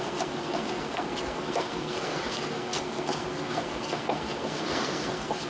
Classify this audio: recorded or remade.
remade